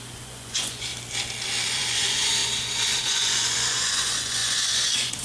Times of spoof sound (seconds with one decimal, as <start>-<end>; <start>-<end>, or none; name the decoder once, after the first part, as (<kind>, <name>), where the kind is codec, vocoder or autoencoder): 0.0-0.9 (vocoder, Vocos); 1.7-5.2

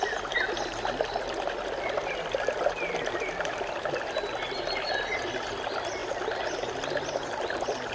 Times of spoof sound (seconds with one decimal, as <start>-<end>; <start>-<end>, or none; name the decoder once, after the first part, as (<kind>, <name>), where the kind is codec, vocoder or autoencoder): none

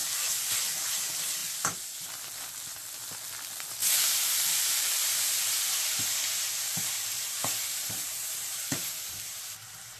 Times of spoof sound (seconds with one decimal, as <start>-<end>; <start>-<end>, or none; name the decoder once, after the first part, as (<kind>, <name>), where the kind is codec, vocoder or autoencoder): 3.8-9.0 (vocoder, BigVGAN v2)

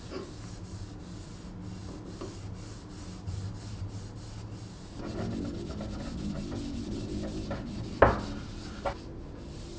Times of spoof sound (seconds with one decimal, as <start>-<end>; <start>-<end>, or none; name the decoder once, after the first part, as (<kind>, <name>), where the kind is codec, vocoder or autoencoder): none

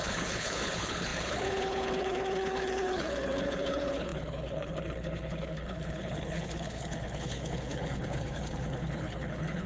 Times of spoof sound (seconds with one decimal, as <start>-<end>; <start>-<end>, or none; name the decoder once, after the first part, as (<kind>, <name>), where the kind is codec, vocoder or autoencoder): 0.0-9.7 (codec, HILCodec)

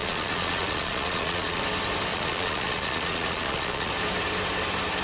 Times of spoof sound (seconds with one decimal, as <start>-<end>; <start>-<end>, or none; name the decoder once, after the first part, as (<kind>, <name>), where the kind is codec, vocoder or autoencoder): 0.0-1.6 (vocoder, Vocos); 2.1-3.9

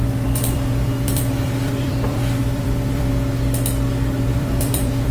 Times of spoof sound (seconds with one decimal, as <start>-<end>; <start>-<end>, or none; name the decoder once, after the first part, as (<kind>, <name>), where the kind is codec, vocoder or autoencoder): 0.0-3.1 (vocoder, BigVGAN v2); 4.3-5.1